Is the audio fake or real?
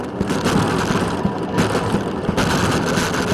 real